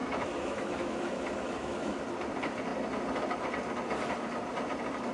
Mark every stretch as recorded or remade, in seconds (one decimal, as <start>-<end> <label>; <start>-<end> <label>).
0.0-2.0 remade; 2.0-5.1 recorded